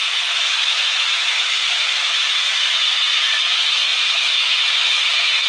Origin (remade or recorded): remade